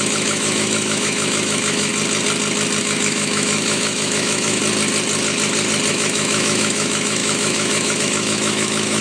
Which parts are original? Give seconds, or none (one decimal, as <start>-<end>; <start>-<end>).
1.9-2.8; 4.6-5.9